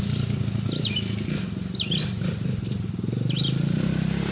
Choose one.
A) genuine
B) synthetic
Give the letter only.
A